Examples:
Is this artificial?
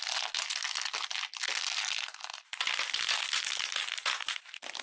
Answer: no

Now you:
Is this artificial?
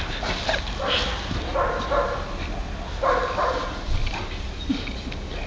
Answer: no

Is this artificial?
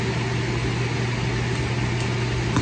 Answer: no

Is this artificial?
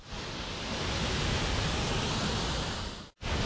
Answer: no